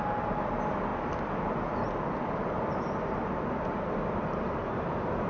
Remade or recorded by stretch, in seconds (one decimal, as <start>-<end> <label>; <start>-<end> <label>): 0.0-5.3 recorded